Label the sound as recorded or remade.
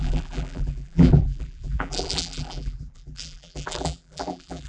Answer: remade